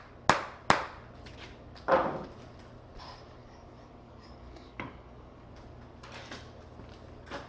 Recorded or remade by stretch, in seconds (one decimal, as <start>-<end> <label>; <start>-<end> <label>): 0.0-3.4 recorded; 3.4-5.5 remade; 5.5-7.5 recorded